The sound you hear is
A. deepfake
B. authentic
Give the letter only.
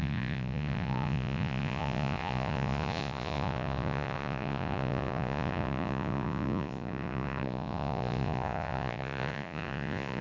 A